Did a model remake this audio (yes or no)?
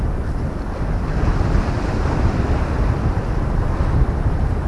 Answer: no